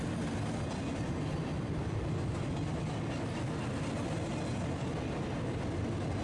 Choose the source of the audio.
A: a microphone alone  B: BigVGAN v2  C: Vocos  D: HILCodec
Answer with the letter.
A